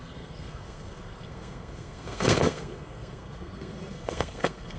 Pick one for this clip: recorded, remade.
remade